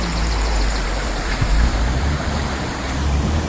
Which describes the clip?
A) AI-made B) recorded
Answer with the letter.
A